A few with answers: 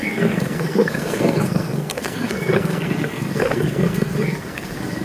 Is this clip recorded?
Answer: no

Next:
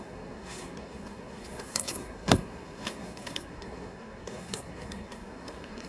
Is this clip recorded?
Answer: no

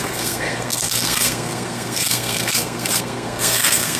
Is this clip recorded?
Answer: no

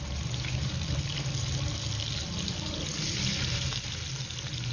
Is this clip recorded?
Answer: yes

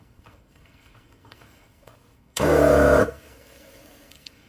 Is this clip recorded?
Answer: no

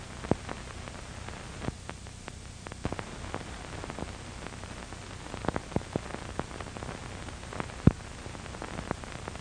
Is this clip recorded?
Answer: yes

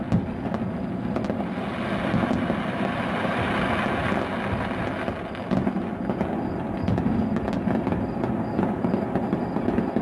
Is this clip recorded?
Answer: yes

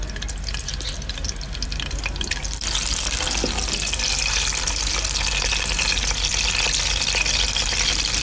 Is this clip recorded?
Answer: yes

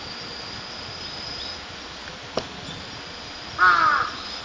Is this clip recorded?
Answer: yes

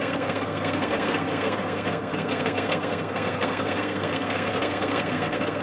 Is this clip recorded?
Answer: no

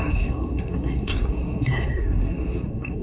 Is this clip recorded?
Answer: no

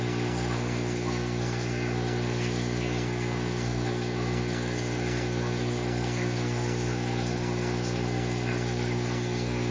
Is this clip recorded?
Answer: no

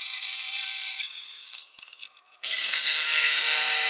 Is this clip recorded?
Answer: no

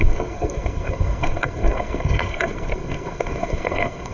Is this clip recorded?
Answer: no